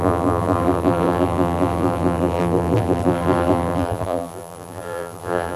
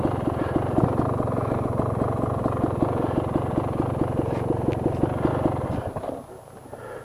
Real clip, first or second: second